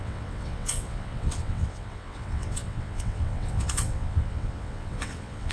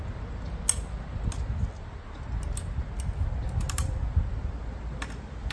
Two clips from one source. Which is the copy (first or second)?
first